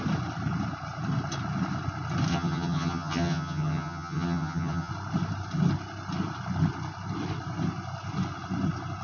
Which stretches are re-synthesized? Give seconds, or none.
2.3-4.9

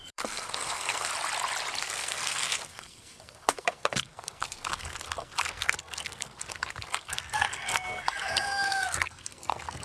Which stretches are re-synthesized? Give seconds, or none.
0.0-1.1; 1.8-9.8

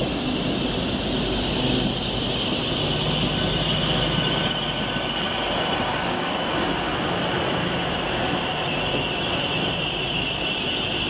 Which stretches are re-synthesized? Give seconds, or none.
5.9-6.5

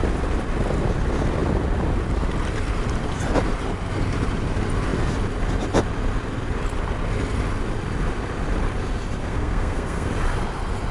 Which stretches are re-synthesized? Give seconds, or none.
9.2-10.1